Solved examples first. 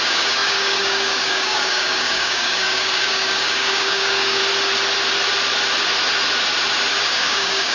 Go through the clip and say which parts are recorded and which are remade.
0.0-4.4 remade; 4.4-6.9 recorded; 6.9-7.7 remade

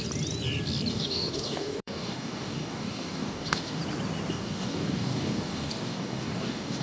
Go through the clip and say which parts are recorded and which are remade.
0.0-0.9 recorded; 0.9-3.8 remade; 3.8-4.3 recorded; 4.3-6.8 remade